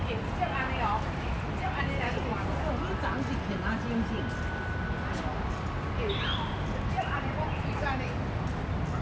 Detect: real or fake real